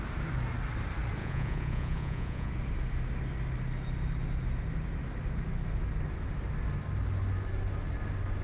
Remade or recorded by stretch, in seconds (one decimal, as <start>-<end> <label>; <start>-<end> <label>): 0.0-1.2 recorded; 1.2-2.5 remade; 2.5-8.4 recorded